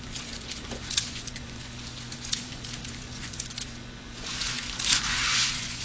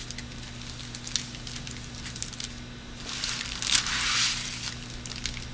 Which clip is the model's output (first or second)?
first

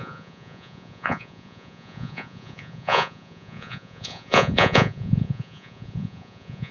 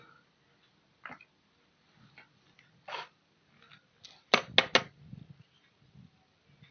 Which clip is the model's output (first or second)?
first